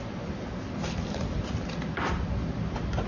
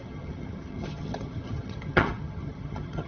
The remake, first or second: second